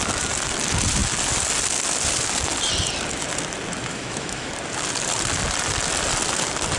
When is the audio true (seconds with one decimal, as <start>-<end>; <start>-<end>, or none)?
0.0-3.9; 4.5-6.8